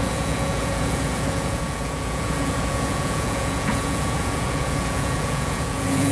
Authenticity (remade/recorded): remade